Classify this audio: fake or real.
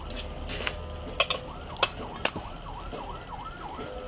real